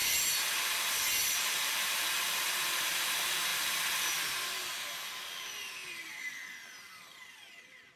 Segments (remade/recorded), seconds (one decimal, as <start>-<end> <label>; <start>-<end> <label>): 0.0-2.5 remade; 2.5-5.8 recorded; 5.8-8.0 remade